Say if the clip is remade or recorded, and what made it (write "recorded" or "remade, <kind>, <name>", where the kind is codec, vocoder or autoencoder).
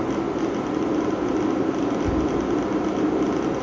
recorded